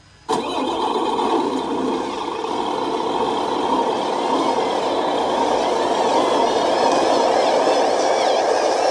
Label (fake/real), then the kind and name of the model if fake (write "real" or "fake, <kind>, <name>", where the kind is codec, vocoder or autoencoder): real